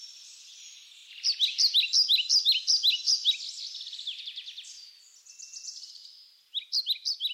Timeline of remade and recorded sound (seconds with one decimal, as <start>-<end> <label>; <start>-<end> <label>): 0.0-7.3 recorded